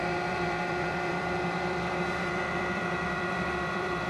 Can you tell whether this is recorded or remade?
remade